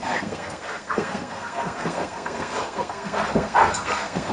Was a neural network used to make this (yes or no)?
yes